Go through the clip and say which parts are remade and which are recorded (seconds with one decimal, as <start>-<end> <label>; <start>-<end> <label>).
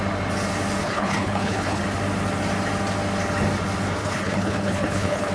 0.0-0.8 recorded; 0.8-1.8 remade; 1.8-4.0 recorded; 4.0-5.3 remade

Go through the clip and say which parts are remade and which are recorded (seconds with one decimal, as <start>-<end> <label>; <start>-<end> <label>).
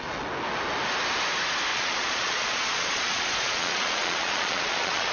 0.0-1.7 recorded; 1.7-5.1 remade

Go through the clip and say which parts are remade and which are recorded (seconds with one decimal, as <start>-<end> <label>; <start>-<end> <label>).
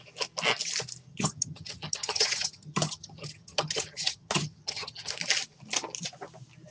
0.0-1.1 recorded; 1.1-5.1 remade; 5.1-6.7 recorded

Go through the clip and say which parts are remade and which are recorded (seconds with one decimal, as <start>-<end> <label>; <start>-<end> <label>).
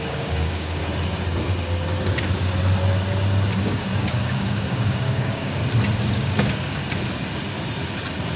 0.0-0.8 remade; 0.8-3.6 recorded; 3.6-5.6 remade; 5.6-6.1 recorded; 6.1-6.8 remade; 6.8-8.4 recorded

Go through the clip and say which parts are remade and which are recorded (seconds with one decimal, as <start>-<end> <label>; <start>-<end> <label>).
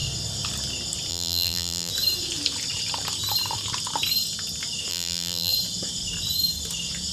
0.0-1.1 recorded; 1.1-1.9 remade; 1.9-4.9 recorded; 4.9-5.5 remade; 5.5-7.1 recorded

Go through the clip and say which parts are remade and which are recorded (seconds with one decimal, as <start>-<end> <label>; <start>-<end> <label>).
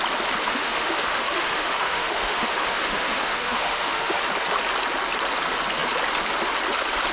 0.0-0.4 recorded; 0.4-4.2 remade; 4.2-7.1 recorded